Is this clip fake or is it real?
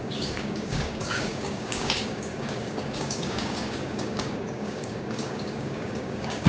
fake